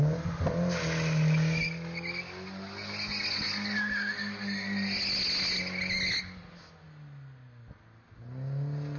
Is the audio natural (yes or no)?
yes